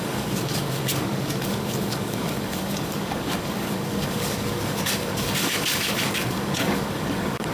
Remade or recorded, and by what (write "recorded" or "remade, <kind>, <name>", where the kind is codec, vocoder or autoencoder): remade, codec, DAC